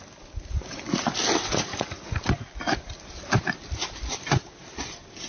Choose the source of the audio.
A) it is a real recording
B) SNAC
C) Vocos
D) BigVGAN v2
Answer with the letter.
A